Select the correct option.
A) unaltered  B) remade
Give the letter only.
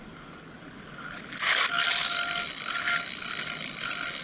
A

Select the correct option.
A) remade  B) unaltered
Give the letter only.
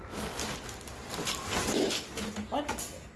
B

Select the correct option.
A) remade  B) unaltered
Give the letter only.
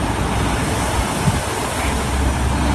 B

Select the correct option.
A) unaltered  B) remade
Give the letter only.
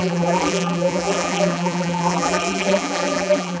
B